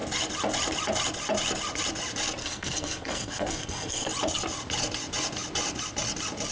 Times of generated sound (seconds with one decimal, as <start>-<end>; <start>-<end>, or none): 2.4-4.1